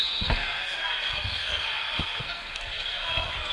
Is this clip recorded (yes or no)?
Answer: no